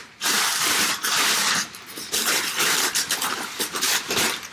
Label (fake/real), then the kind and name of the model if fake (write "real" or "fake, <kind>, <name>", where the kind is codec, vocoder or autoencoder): fake, vocoder, BigVGAN v2